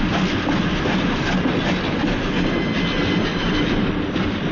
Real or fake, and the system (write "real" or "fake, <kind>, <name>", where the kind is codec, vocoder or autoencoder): real